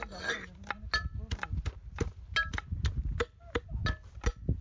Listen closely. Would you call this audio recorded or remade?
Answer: recorded